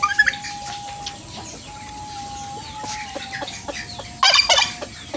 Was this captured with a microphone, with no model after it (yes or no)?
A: yes